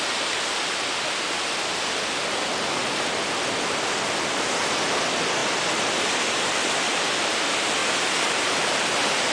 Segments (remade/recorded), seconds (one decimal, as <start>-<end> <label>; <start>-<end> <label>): 0.0-9.3 recorded